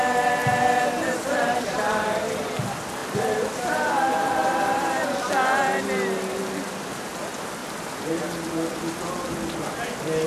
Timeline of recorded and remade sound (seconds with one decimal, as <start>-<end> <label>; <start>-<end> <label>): 0.0-0.4 recorded; 0.4-2.2 remade; 2.2-3.0 recorded; 3.0-5.3 remade; 5.3-7.6 recorded; 7.6-8.8 remade; 8.8-10.3 recorded